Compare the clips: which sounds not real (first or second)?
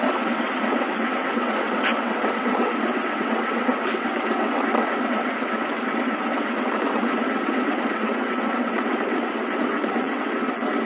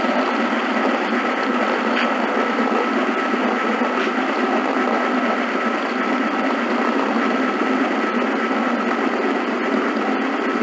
first